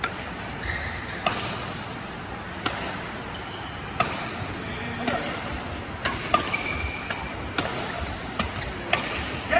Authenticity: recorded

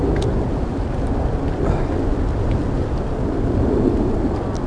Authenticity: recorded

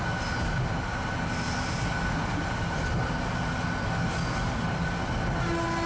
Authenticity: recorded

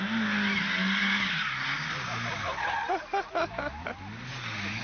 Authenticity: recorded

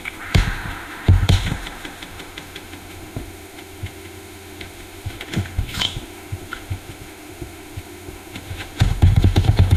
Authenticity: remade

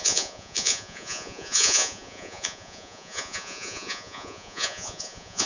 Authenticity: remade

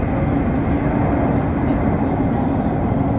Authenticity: recorded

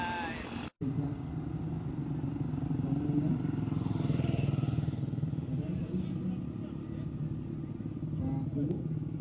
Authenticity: recorded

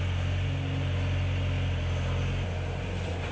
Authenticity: recorded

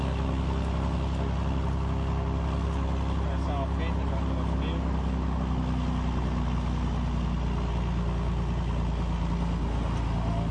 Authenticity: recorded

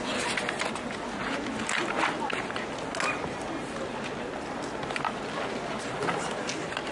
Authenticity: recorded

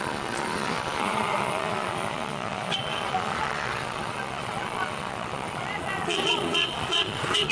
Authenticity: remade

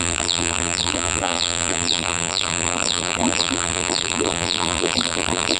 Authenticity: remade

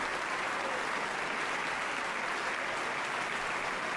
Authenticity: recorded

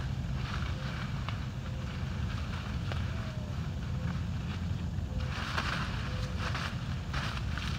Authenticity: recorded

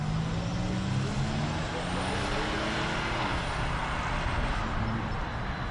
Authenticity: recorded